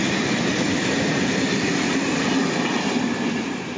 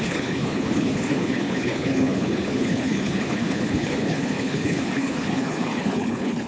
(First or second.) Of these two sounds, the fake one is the second